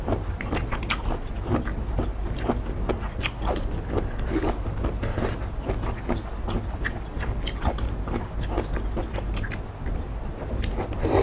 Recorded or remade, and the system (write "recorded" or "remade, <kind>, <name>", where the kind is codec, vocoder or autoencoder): recorded